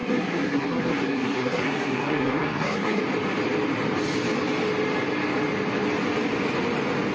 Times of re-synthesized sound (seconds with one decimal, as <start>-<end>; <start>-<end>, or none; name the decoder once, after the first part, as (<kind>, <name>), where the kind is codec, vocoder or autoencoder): 0.0-3.0 (codec, SNAC)